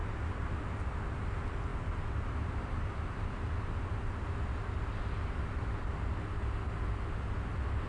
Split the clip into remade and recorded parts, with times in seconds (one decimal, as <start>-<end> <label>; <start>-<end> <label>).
0.0-7.9 recorded